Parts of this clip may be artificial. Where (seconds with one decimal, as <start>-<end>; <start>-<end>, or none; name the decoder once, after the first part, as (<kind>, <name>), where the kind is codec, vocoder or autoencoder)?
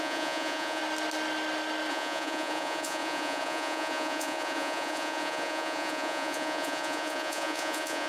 0.0-0.8 (vocoder, Vocos); 1.9-8.1